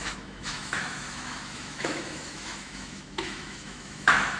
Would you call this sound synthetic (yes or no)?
yes